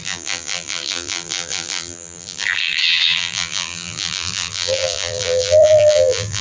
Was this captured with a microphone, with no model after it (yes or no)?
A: no